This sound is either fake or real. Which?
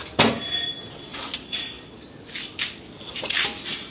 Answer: real